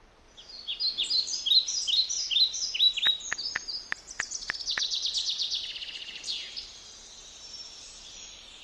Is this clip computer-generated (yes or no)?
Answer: no